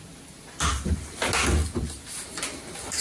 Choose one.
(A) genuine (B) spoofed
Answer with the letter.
A